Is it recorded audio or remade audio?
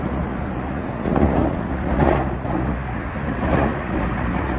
remade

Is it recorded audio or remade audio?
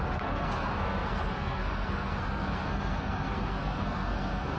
remade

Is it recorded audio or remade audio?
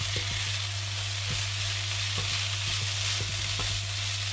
recorded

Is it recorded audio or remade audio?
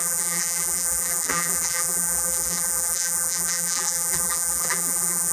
remade